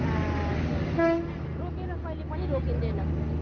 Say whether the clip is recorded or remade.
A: recorded